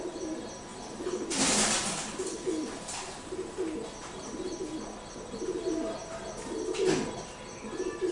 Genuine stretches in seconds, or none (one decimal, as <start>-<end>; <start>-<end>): 0.0-8.1